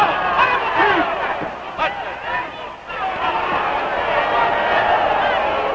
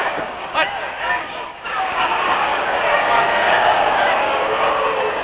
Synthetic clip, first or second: second